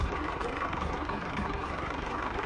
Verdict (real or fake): fake